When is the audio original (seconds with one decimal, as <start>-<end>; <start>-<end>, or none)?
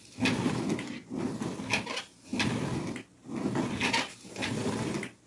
0.0-5.3